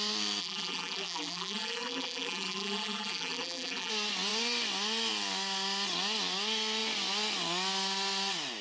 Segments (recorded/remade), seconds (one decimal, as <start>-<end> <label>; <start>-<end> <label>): 0.0-0.4 recorded; 0.4-3.9 remade; 3.9-8.6 recorded